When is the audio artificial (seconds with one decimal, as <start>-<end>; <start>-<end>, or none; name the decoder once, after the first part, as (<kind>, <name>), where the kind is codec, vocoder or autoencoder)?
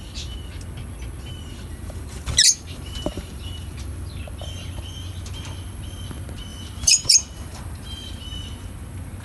1.7-3.7 (vocoder, BigVGAN v2); 6.5-8.2